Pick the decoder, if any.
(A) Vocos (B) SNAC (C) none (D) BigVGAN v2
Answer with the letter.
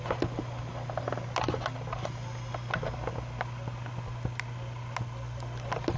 C